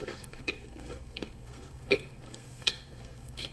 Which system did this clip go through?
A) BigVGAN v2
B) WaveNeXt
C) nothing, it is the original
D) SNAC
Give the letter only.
D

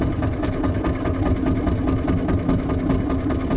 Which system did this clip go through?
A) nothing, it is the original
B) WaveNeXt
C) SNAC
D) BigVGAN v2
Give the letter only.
A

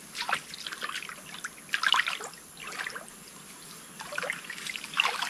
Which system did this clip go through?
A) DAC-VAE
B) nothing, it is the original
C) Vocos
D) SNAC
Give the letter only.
B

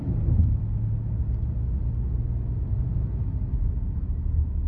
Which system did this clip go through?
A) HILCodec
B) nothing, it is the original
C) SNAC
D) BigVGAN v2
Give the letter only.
B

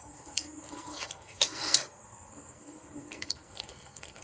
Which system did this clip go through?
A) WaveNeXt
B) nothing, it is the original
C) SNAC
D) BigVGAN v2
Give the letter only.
C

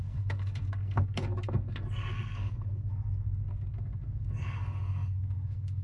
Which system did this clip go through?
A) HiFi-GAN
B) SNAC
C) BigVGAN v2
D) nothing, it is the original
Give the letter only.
B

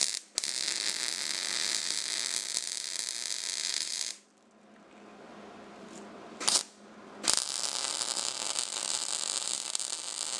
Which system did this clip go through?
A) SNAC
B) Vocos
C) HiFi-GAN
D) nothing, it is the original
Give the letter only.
D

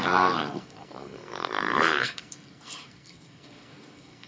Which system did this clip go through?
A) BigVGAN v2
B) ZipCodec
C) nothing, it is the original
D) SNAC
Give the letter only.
D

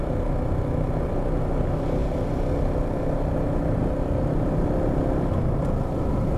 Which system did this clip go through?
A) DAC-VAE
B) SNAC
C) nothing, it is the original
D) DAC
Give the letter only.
C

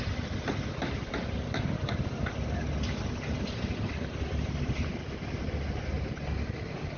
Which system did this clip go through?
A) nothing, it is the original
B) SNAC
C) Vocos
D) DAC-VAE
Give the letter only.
A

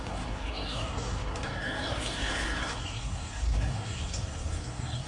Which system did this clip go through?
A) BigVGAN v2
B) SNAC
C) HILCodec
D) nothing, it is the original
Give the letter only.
B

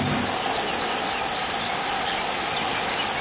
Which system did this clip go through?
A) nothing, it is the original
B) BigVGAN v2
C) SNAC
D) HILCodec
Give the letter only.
A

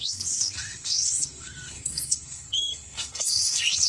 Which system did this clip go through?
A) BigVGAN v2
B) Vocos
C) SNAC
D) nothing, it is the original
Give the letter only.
C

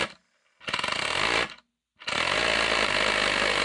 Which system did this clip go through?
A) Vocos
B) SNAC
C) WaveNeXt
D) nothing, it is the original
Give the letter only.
D